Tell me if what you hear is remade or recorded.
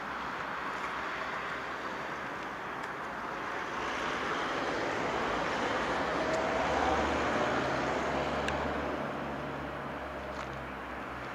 recorded